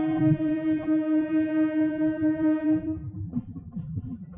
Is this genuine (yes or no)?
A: no